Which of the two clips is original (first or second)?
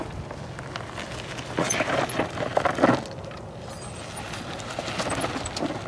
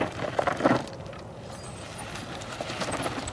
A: first